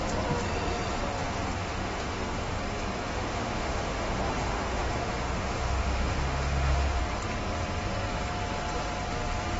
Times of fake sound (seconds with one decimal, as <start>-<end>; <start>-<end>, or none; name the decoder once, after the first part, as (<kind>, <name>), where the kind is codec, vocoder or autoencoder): 1.2-2.6 (autoencoder, DAC-VAE); 3.1-7.0